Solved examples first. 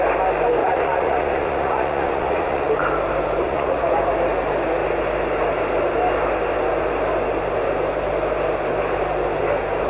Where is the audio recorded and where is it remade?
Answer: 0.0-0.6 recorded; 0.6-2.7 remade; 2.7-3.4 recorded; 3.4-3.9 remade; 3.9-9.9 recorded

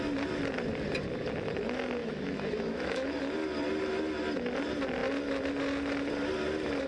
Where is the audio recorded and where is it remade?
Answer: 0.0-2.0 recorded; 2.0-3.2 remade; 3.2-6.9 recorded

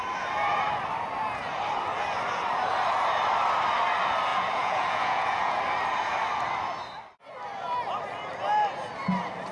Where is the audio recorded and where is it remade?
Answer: 0.0-4.3 recorded; 4.3-5.6 remade; 5.6-9.5 recorded

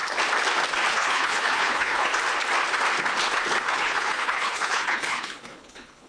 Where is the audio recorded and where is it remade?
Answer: 0.0-0.9 recorded; 0.9-2.1 remade; 2.1-3.7 recorded; 3.7-6.1 remade

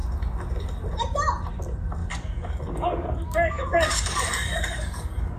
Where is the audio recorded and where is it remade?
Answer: 0.0-2.0 recorded; 2.0-5.4 remade